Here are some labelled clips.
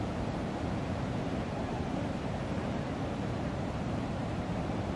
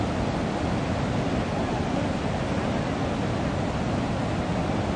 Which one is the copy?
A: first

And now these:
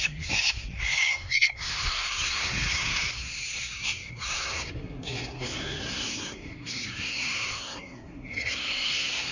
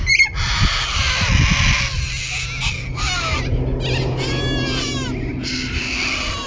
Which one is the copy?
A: first